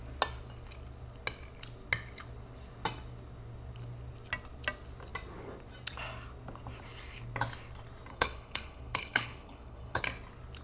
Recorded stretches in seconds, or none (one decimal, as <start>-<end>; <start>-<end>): 0.0-8.1; 10.0-10.6